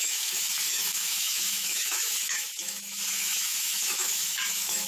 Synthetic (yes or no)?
yes